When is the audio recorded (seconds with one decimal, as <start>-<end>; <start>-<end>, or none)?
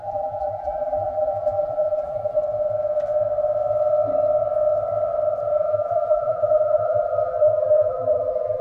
2.4-5.5